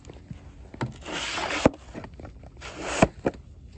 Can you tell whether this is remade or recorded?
recorded